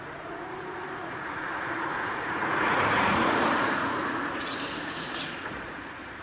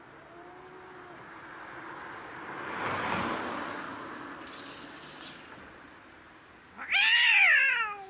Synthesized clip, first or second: first